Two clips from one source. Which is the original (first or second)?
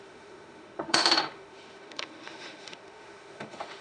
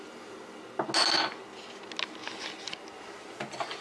second